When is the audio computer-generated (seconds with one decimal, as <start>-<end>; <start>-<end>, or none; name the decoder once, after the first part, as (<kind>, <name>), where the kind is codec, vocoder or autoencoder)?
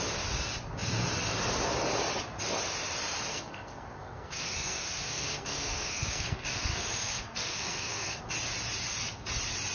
3.3-8.2 (codec, SNAC)